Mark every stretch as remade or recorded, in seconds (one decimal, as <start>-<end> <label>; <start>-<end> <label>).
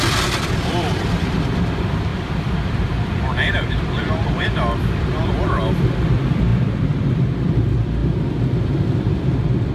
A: 0.0-8.0 remade; 8.0-8.6 recorded; 8.6-9.7 remade